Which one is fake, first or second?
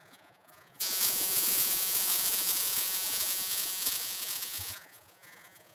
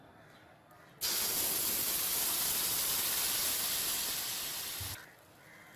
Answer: first